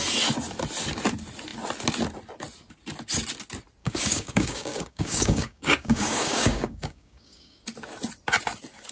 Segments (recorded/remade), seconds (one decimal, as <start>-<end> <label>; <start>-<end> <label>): 0.0-3.8 recorded; 3.8-7.6 remade; 7.6-8.9 recorded